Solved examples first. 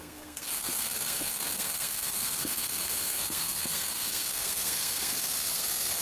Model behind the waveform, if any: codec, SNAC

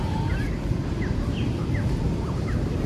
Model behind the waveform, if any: none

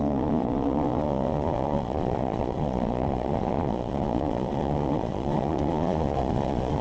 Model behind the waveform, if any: vocoder, Vocos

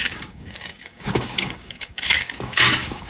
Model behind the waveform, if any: codec, DAC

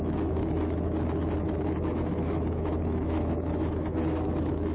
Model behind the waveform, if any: autoencoder, DAC-VAE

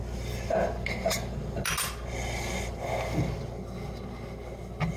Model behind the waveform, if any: none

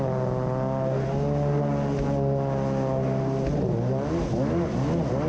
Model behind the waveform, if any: none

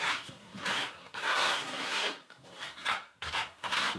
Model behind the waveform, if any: codec, SNAC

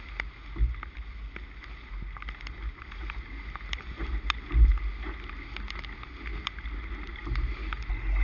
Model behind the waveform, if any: none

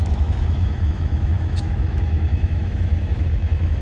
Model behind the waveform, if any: autoencoder, DAC-VAE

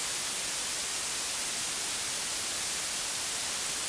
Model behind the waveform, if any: none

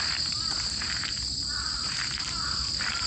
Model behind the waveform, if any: none